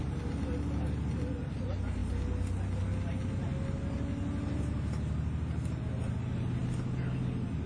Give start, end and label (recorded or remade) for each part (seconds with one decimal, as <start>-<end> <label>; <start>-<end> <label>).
0.0-7.7 recorded